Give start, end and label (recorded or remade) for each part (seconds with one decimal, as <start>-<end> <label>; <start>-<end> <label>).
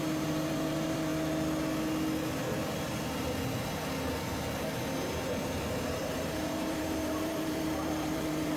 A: 0.0-1.1 remade; 1.1-6.2 recorded; 6.2-8.6 remade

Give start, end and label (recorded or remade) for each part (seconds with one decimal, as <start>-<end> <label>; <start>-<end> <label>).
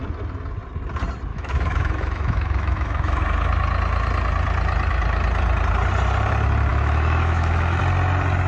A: 0.0-1.3 recorded; 1.3-3.2 remade; 3.2-6.7 recorded; 6.7-7.8 remade; 7.8-8.5 recorded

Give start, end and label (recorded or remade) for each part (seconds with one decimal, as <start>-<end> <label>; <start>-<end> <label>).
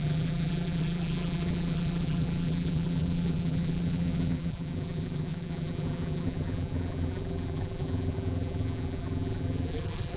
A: 0.0-10.2 remade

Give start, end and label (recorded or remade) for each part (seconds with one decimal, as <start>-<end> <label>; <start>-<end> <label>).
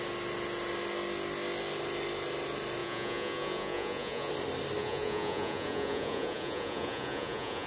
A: 0.0-2.8 recorded; 2.8-4.3 remade; 4.3-4.8 recorded; 4.8-7.7 remade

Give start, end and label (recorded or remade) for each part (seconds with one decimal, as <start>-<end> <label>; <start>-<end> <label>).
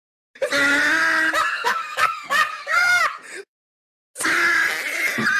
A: 0.0-1.5 recorded; 1.5-3.0 remade; 3.0-5.4 recorded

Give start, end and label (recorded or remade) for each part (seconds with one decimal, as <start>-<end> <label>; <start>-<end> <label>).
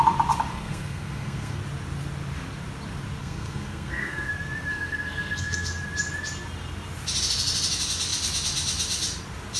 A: 0.0-0.5 recorded; 0.5-1.6 remade; 1.6-3.2 recorded; 3.2-4.3 remade; 4.3-4.7 recorded; 4.7-5.7 remade; 5.7-9.6 recorded